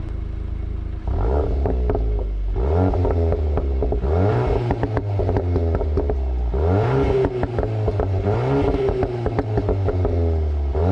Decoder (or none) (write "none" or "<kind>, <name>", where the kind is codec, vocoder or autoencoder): none